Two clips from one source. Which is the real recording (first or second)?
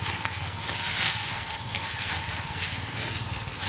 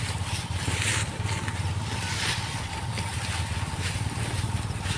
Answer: second